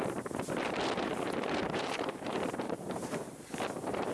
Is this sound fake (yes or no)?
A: yes